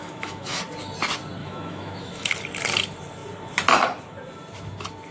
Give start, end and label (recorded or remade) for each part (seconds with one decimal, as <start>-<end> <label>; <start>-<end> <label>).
0.0-0.6 remade; 0.6-1.4 recorded; 1.4-2.3 remade; 2.3-5.1 recorded

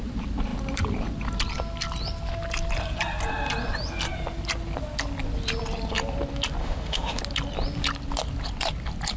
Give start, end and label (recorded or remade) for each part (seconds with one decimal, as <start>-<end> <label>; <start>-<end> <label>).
0.0-6.6 recorded; 6.6-7.2 remade; 7.2-9.2 recorded

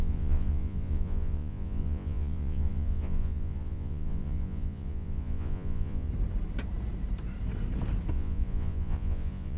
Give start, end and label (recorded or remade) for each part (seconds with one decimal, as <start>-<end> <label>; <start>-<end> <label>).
0.0-6.1 remade; 6.1-8.1 recorded; 8.1-9.6 remade

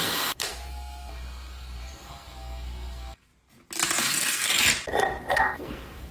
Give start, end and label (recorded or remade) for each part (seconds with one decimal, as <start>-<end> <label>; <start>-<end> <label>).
0.0-3.3 remade; 3.3-4.0 recorded; 4.0-4.5 remade; 4.5-5.3 recorded; 5.3-6.1 remade